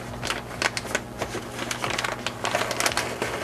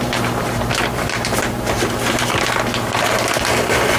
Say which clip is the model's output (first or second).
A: second